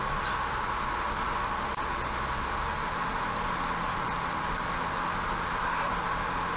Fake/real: real